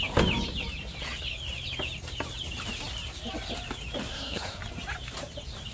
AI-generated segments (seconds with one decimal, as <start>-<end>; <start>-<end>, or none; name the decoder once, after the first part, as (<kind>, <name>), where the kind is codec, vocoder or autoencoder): 4.1-4.6 (codec, SNAC)